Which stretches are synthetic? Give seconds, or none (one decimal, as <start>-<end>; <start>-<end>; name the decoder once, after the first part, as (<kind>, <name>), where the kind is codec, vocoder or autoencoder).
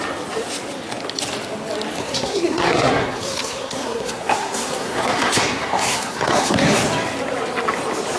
2.0-6.8 (codec, SNAC)